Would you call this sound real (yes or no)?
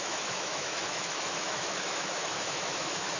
no